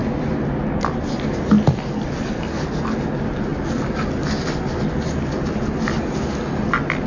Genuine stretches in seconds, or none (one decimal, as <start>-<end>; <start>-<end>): 0.0-7.1